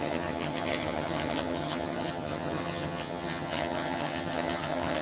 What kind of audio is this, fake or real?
fake